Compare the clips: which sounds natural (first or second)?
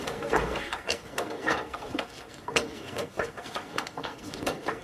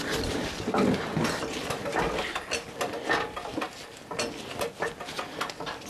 second